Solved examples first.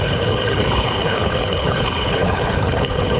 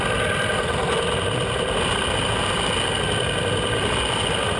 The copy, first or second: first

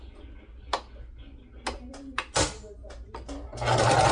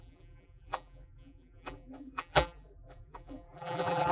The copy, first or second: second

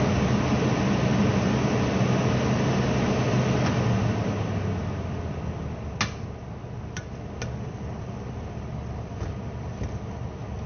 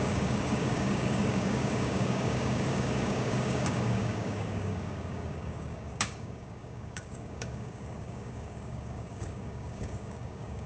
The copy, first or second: second